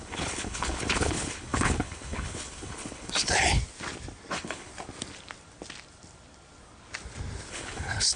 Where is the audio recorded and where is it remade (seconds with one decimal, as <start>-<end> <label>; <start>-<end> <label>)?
0.0-3.6 remade; 3.6-4.3 recorded; 4.3-4.7 remade; 4.7-7.5 recorded; 7.5-8.2 remade